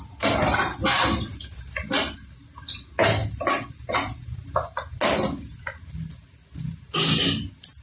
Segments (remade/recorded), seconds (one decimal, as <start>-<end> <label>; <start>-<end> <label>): 0.0-7.8 recorded